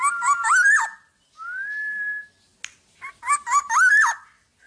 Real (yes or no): yes